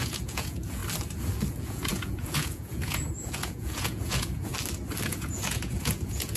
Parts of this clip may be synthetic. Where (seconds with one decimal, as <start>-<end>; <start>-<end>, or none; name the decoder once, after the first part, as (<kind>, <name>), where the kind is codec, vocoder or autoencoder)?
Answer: 0.0-0.8 (vocoder, Vocos); 1.5-4.5; 5.1-6.4